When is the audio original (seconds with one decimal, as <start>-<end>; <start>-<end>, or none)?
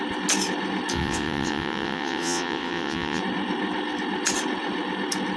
0.0-0.9; 3.2-5.4